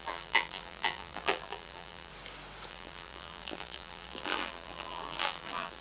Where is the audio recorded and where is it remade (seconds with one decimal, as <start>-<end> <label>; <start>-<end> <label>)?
0.0-2.1 remade; 2.1-2.7 recorded; 2.7-5.8 remade